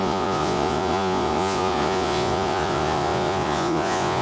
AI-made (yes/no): yes